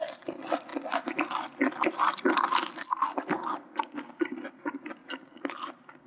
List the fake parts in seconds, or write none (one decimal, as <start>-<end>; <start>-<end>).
none